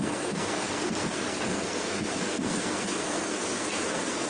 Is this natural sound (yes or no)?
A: no